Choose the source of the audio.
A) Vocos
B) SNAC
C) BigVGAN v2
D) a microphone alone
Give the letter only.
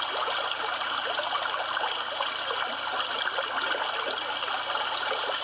D